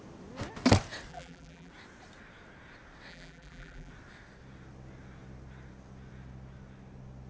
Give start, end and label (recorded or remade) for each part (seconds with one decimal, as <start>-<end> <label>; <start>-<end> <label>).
0.0-1.1 recorded; 1.1-1.7 remade; 1.7-3.1 recorded; 3.1-3.9 remade; 3.9-7.3 recorded